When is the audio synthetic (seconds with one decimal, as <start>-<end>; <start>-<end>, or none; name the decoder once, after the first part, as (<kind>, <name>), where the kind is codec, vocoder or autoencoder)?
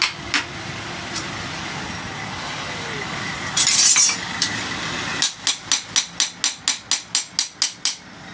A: none